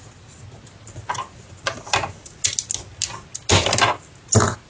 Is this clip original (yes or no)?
yes